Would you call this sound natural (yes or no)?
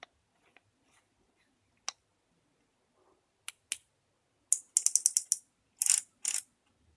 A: yes